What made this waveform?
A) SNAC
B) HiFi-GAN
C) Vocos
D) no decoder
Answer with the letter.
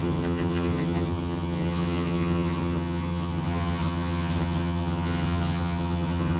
B